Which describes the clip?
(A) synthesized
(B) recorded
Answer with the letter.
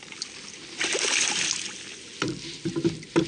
B